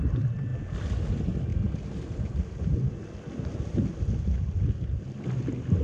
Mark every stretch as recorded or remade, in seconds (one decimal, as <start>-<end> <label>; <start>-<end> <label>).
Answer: 0.0-5.8 recorded